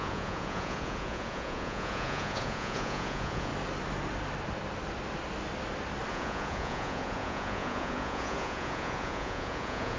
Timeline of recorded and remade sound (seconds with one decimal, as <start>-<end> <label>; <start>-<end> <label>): 0.0-3.5 remade; 3.5-6.1 recorded; 6.1-10.0 remade